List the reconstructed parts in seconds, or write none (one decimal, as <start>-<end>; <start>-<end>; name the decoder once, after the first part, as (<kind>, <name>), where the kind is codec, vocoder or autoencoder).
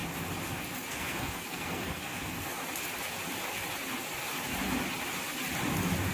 0.9-2.6 (codec, SNAC)